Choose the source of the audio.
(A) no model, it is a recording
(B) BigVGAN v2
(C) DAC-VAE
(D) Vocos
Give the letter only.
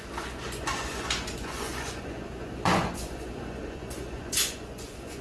D